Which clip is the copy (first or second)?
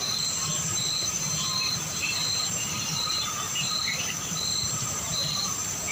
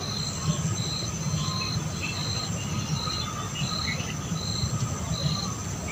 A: first